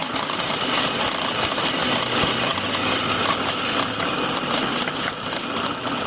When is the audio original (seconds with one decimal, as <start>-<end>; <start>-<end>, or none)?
1.3-4.6; 5.4-6.1